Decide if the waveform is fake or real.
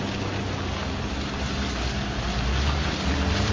real